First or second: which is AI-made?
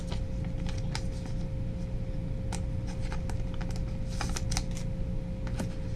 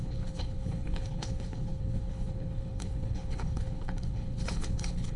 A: second